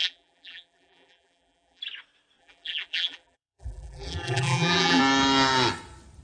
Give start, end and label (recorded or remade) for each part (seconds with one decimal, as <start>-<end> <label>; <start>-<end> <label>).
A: 0.0-1.8 remade; 1.8-2.4 recorded; 2.4-5.0 remade; 5.0-6.2 recorded